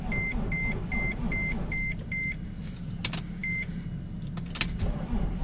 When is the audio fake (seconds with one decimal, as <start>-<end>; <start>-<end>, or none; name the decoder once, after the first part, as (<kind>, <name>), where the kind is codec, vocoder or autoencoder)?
none